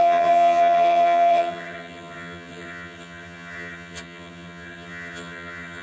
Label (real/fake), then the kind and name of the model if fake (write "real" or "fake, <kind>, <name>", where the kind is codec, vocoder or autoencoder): fake, vocoder, HiFi-GAN